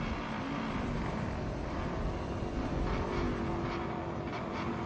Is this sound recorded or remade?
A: recorded